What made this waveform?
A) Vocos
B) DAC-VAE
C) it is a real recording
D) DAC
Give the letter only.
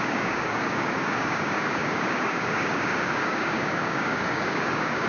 D